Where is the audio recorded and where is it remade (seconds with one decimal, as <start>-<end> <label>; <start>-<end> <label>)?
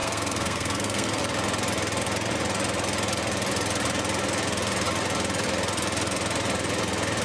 0.0-1.2 remade; 1.2-7.2 recorded